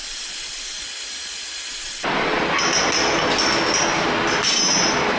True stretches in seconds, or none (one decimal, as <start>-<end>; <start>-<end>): 0.8-1.7; 2.4-5.2

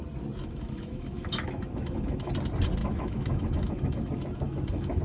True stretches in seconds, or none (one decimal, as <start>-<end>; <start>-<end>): 0.0-0.4; 2.3-2.8

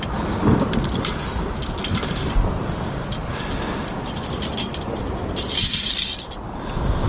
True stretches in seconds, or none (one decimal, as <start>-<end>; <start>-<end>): 0.0-7.1

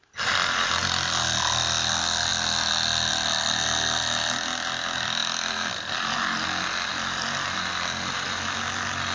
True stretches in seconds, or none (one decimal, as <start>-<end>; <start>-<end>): 0.0-9.1

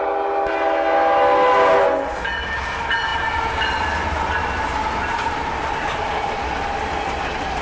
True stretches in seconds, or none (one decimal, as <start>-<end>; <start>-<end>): 0.0-7.6

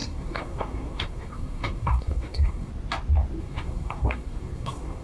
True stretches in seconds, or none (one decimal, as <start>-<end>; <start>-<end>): 2.7-3.4

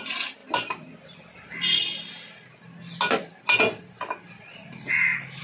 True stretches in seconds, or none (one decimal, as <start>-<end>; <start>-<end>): 0.0-5.4

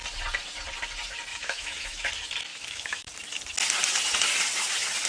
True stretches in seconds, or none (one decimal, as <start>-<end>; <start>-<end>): 0.0-1.3; 2.1-2.5; 3.1-5.1